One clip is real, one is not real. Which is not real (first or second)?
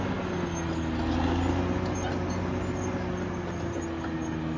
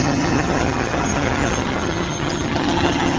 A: second